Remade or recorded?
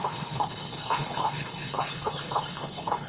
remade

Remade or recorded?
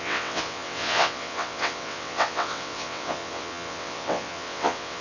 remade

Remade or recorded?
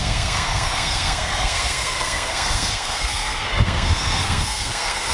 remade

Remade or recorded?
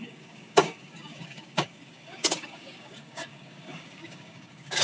remade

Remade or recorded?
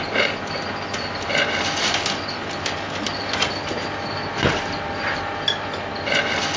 recorded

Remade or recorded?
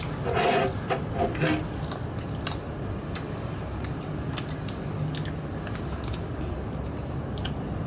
recorded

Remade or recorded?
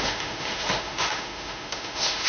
remade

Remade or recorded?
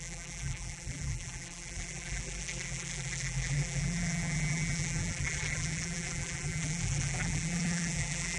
remade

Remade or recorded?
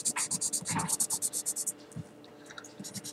recorded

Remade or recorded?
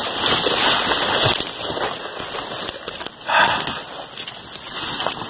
recorded